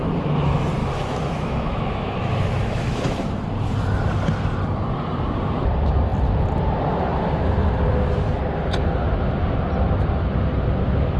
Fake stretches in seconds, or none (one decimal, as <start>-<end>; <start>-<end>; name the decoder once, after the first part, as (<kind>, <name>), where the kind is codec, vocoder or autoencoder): 0.8-3.3 (autoencoder, DAC-VAE)

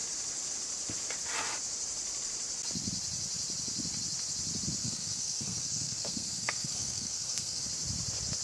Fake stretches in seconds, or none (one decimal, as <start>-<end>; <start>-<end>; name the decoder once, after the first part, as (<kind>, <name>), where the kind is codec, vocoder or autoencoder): 4.8-7.6 (codec, SNAC)

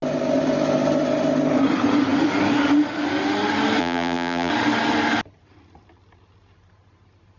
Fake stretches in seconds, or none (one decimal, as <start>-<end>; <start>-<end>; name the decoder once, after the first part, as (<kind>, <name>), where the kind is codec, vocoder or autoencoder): 3.8-4.5 (vocoder, BigVGAN v2)

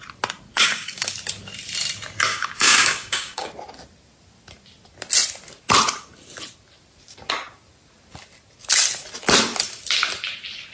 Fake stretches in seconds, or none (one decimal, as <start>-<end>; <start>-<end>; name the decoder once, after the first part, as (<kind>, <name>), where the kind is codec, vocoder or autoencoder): 0.5-1.1 (codec, DAC); 2.3-3.5

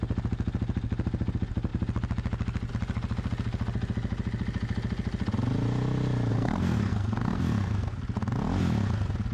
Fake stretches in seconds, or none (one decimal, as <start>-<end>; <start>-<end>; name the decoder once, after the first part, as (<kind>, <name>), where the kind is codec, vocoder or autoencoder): 6.3-8.0 (codec, SNAC)